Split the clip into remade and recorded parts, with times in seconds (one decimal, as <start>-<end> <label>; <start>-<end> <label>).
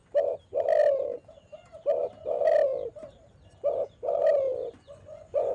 0.0-4.6 recorded; 4.6-5.5 remade